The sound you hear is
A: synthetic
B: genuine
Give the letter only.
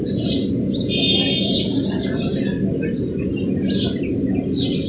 B